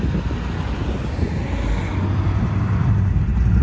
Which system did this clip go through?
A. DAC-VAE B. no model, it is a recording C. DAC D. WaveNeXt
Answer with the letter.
B